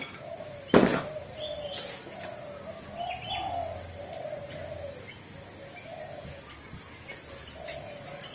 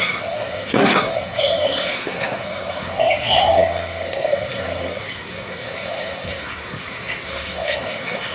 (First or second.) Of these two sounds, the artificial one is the second